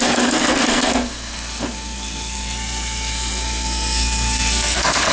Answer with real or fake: fake